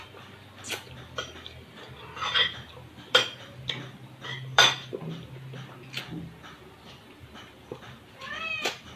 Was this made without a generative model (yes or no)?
no